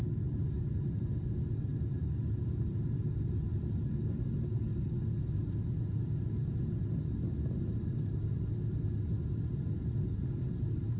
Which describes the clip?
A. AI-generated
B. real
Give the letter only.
B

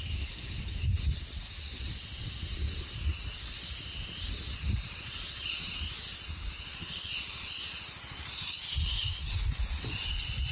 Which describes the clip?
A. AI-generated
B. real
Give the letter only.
B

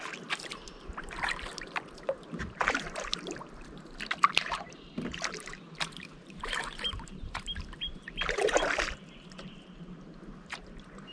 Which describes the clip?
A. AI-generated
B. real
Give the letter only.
A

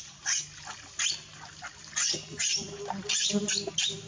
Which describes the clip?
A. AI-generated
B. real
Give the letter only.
B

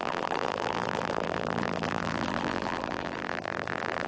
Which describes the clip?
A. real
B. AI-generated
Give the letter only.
B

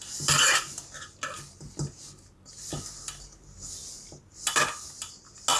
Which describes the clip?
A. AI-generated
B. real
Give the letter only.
B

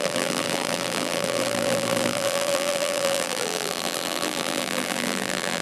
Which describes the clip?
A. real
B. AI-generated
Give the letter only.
B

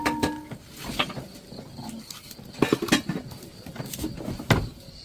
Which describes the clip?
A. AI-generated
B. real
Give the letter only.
B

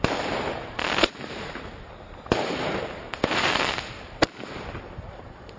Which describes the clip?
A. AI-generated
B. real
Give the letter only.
A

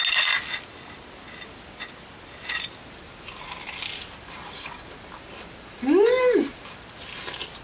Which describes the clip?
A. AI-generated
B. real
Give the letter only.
B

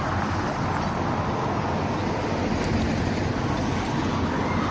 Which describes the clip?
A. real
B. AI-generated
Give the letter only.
A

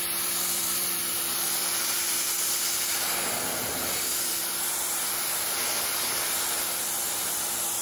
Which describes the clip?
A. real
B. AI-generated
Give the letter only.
B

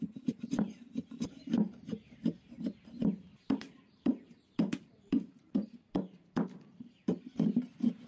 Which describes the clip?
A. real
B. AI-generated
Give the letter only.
B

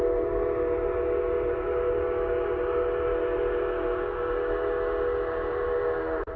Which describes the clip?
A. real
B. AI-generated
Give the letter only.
A